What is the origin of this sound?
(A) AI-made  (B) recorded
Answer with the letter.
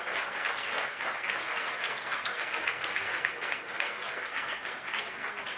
A